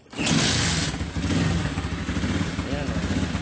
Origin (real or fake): real